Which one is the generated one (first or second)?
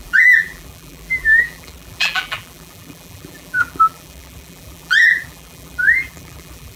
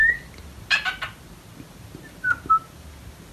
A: first